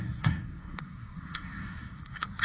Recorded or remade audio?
remade